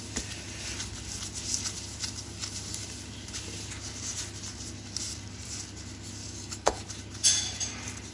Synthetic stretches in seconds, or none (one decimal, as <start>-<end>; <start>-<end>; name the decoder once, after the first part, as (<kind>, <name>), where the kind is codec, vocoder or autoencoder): 6.2-6.8 (codec, DAC)